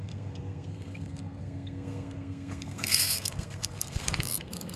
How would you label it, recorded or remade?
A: remade